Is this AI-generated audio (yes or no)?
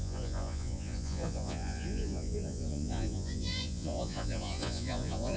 yes